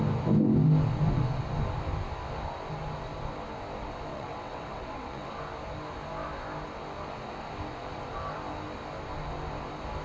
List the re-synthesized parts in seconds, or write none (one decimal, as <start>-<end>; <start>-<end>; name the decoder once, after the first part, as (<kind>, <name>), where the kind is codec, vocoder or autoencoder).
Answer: 4.1-5.3 (vocoder, WaveNeXt)